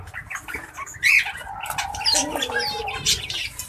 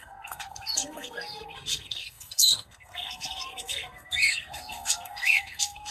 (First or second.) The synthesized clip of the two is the second